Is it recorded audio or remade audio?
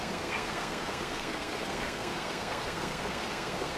remade